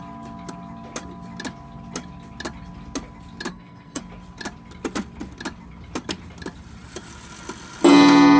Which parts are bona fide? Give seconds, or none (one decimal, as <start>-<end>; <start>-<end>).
0.0-3.5; 4.0-8.4